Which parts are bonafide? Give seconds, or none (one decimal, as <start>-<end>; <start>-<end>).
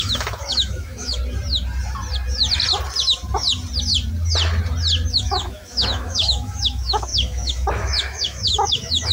1.2-5.1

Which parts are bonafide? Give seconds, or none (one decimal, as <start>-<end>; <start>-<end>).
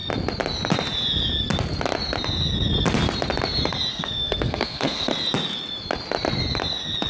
0.0-3.9; 5.1-7.1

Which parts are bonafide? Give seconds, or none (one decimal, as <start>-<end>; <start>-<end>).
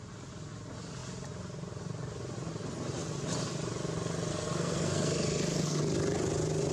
0.0-4.3; 5.8-6.7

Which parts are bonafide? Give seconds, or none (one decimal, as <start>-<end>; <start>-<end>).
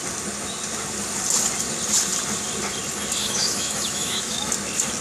0.0-3.2; 4.5-5.0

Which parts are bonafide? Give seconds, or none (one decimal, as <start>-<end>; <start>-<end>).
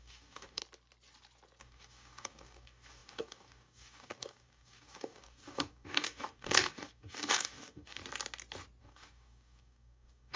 0.6-1.6; 8.0-8.8